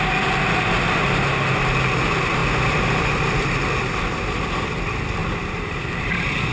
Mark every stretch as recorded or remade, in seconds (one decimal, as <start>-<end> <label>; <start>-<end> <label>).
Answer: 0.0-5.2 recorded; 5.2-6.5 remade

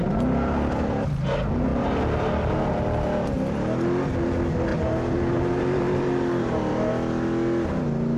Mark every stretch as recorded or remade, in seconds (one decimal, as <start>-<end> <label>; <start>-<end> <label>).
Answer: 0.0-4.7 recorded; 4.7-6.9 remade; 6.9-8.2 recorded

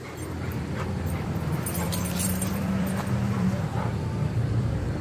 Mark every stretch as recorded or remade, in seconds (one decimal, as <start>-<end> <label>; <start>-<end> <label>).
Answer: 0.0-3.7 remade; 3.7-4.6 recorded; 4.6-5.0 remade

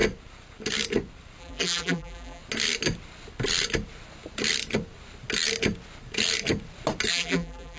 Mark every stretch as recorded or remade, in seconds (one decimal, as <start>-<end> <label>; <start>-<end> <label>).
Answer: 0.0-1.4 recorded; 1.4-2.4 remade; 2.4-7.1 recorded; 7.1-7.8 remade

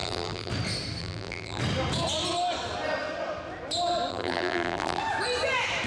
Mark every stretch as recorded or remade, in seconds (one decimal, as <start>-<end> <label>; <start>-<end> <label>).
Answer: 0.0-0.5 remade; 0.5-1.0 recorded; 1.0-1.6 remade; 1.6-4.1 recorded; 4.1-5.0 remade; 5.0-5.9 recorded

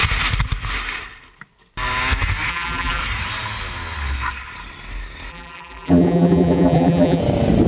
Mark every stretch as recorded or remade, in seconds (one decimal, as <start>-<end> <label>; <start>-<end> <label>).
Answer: 0.0-2.5 recorded; 2.5-3.0 remade; 3.0-5.3 recorded; 5.3-7.2 remade; 7.2-7.7 recorded

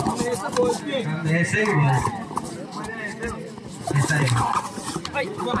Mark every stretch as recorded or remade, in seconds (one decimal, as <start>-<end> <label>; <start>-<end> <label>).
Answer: 0.0-1.2 recorded; 1.2-4.6 remade; 4.6-5.6 recorded

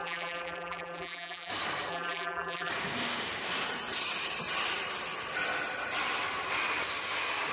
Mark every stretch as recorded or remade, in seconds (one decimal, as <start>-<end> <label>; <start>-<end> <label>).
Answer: 0.0-1.5 remade; 1.5-1.9 recorded; 1.9-2.7 remade; 2.7-7.5 recorded